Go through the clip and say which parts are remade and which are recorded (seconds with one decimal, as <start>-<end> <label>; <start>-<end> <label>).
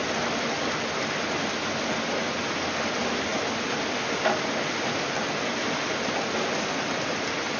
0.0-7.6 recorded